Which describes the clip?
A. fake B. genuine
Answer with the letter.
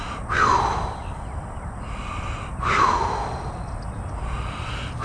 B